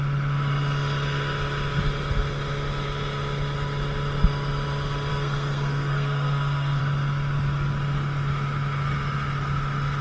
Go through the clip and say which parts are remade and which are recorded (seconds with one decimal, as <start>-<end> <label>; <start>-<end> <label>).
0.0-5.1 recorded; 5.1-6.8 remade; 6.8-10.0 recorded